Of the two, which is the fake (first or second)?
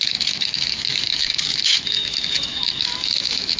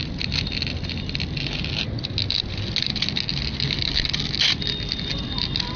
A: first